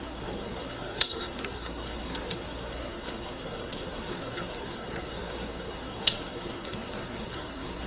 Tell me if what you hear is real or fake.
fake